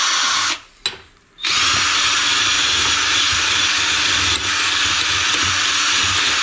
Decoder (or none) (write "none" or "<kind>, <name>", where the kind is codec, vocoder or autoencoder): none